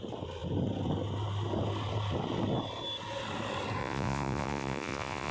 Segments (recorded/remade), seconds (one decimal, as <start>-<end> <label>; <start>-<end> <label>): 0.0-3.8 recorded; 3.8-5.3 remade